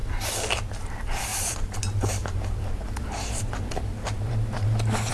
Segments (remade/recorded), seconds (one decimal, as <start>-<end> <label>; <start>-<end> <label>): 0.0-0.8 recorded; 0.8-5.1 remade